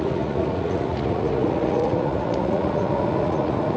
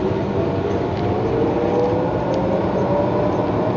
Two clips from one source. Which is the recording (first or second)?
second